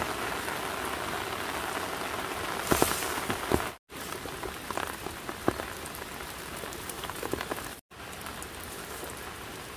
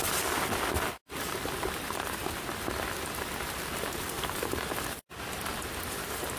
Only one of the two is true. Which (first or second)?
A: first